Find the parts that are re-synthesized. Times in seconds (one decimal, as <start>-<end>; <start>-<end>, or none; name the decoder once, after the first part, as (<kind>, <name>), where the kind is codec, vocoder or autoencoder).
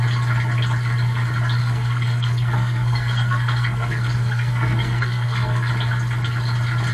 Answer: 1.6-5.7 (codec, SNAC)